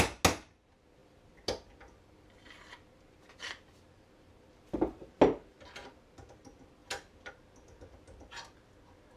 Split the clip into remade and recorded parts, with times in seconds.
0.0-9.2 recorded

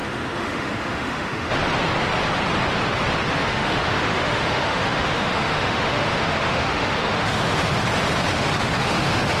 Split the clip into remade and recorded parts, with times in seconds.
0.0-1.5 remade; 1.5-3.4 recorded; 3.4-7.6 remade; 7.6-8.3 recorded; 8.3-9.4 remade

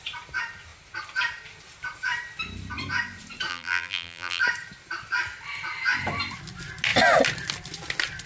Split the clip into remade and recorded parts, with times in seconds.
0.0-3.5 recorded; 3.5-4.4 remade; 4.4-8.3 recorded

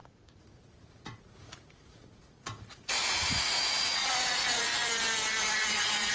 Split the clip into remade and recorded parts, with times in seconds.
0.0-4.7 remade; 4.7-5.4 recorded; 5.4-6.1 remade

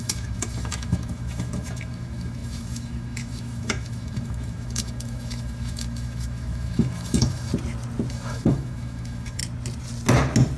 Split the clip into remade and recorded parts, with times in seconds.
0.0-7.5 remade; 7.5-8.1 recorded; 8.1-9.4 remade; 9.4-10.6 recorded

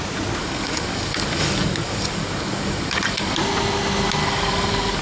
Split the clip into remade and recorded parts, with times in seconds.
0.0-0.4 recorded; 0.4-3.4 remade; 3.4-4.2 recorded; 4.2-5.0 remade

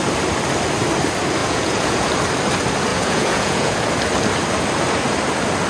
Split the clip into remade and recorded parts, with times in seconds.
0.0-1.4 recorded; 1.4-2.1 remade; 2.1-2.9 recorded; 2.9-3.9 remade; 3.9-5.7 recorded